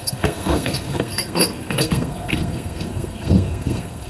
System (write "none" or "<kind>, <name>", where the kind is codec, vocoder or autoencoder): codec, SNAC